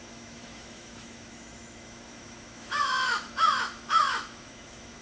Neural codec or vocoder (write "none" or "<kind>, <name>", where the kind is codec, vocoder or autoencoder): autoencoder, DAC-VAE